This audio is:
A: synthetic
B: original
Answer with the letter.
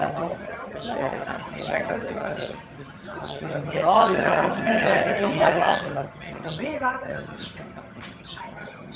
A